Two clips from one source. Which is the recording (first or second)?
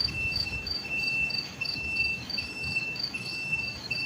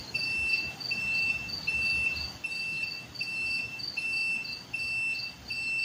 second